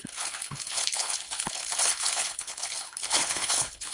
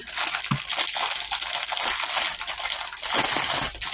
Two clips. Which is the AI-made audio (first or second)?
first